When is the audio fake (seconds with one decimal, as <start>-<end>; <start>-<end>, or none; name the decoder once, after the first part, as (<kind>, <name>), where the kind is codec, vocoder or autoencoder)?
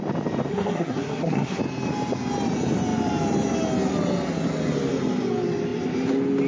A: 0.5-1.6 (codec, SNAC)